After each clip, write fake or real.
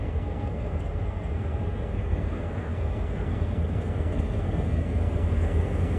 fake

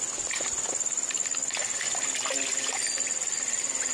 real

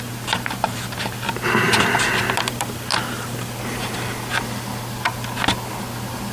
real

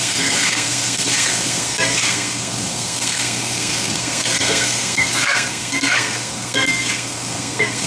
fake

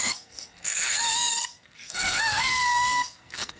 fake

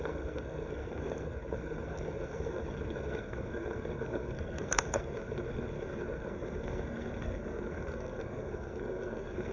fake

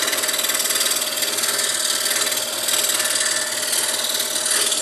real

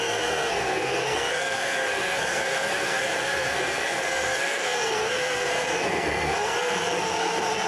fake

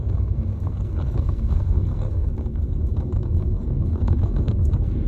fake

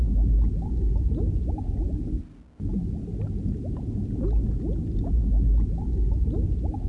real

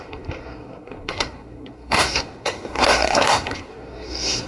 fake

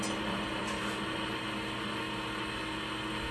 real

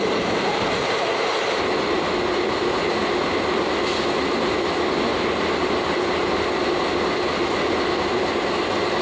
real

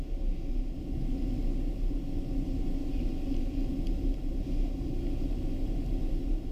real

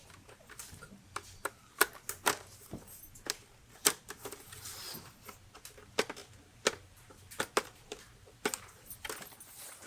real